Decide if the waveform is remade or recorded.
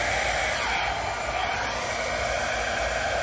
recorded